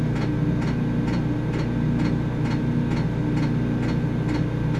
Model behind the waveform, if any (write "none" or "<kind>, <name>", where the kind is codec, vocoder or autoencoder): none